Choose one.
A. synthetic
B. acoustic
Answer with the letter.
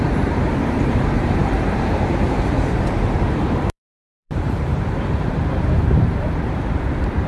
A